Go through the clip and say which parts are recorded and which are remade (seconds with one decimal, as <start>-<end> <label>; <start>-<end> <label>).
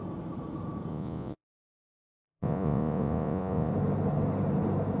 0.0-0.9 recorded; 0.9-3.7 remade; 3.7-5.0 recorded